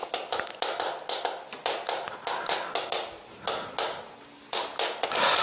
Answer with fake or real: real